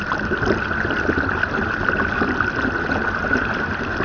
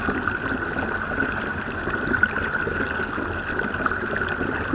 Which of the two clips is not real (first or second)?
first